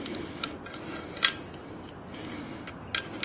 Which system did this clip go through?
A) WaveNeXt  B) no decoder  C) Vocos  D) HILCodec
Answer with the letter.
B